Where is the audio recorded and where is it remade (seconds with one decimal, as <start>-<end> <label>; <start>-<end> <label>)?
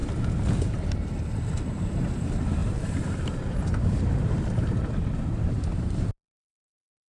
0.0-1.7 recorded; 1.7-7.1 remade